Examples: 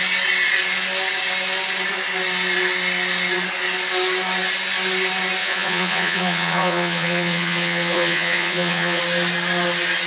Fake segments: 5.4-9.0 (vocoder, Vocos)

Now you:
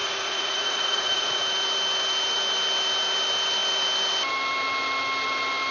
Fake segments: 0.0-1.4 (vocoder, Vocos)

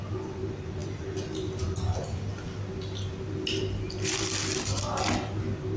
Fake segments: none